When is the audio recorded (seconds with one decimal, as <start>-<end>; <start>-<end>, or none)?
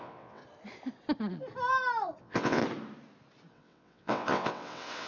0.4-2.2; 2.6-3.5